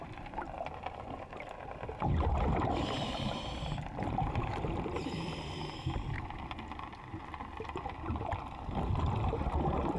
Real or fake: fake